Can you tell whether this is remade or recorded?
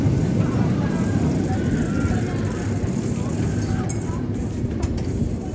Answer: recorded